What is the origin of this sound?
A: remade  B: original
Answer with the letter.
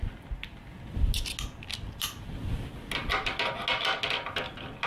B